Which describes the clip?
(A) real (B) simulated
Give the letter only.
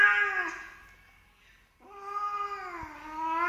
A